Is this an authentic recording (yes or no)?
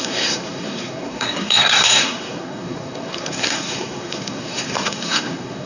no